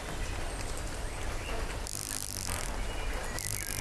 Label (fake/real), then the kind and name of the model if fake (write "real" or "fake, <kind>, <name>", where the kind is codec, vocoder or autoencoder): real